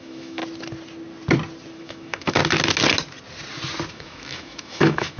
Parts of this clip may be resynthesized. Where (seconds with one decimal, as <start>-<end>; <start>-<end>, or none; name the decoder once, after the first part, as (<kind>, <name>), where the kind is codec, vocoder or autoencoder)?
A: 0.0-0.4 (autoencoder, DAC-VAE); 1.8-2.4; 3.9-5.2

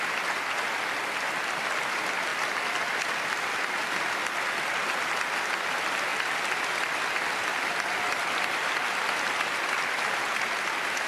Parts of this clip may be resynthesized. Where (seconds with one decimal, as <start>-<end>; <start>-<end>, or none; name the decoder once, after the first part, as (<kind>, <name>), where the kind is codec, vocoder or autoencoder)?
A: none